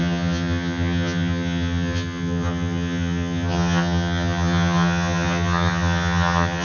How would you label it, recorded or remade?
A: remade